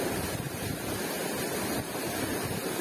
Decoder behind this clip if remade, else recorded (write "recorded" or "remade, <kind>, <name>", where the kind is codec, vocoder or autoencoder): recorded